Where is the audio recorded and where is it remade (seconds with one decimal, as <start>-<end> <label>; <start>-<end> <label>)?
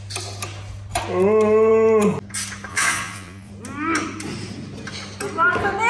0.0-2.7 recorded; 2.7-3.5 remade; 3.5-5.9 recorded